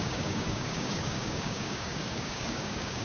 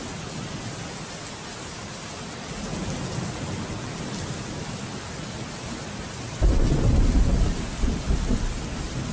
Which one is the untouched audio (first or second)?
second